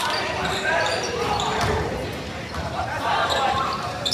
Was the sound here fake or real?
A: fake